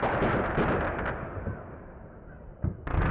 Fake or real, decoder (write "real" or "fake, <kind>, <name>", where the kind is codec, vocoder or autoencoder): fake, vocoder, BigVGAN v2